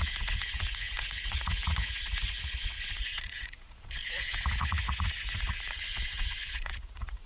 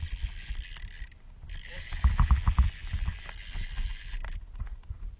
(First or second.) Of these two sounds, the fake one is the first